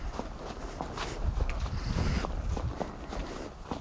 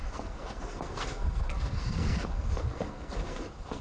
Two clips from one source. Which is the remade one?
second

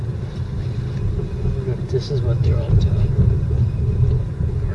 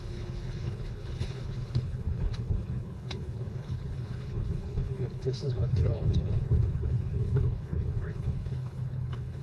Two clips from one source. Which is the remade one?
second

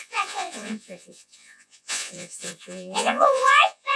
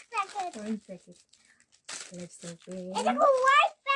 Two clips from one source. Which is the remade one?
first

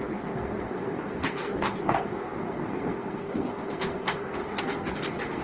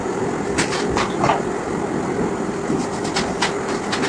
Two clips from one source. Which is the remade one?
first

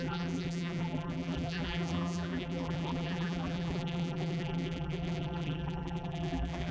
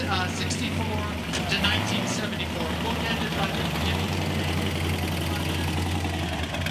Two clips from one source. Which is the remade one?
first